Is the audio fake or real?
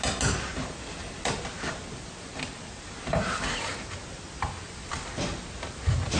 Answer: real